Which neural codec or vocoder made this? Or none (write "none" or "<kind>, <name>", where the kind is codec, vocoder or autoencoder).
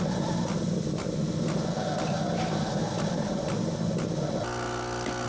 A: none